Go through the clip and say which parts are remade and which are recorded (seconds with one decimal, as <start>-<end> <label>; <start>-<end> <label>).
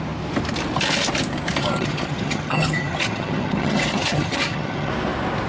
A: 0.0-1.6 recorded; 1.6-4.9 remade; 4.9-5.5 recorded